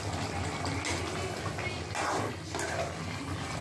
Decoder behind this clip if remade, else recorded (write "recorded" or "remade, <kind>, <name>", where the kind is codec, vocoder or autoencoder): recorded